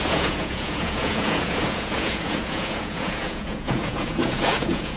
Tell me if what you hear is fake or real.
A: fake